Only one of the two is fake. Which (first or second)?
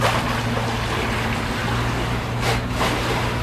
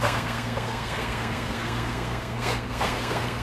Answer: second